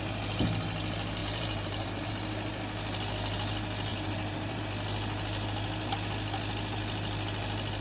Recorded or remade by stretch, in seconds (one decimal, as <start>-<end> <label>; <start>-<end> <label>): 0.0-1.2 recorded; 1.2-2.1 remade; 2.1-3.9 recorded; 3.9-4.6 remade; 4.6-7.8 recorded